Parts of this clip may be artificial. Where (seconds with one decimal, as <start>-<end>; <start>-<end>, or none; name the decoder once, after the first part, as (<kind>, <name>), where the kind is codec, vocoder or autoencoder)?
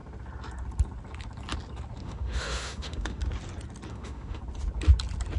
2.0-3.2 (autoencoder, DAC-VAE); 3.9-4.4